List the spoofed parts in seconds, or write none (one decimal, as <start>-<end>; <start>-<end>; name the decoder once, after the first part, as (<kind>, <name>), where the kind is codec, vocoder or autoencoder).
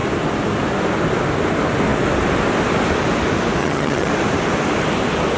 3.6-4.1 (vocoder, HiFi-GAN)